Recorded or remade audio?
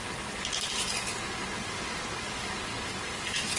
recorded